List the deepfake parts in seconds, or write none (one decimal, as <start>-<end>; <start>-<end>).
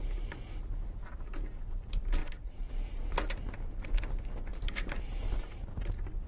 1.0-1.6; 2.2-2.7; 4.5-5.6